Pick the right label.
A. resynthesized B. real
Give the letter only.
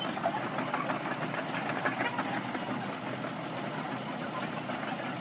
B